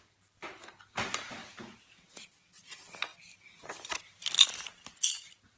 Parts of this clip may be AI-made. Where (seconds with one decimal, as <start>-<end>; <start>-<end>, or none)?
1.4-2.2